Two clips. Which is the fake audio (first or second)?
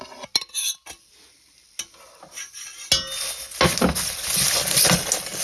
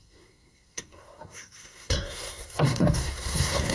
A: second